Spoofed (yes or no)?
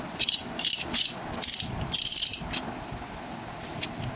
no